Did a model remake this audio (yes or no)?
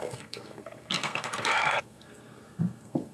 yes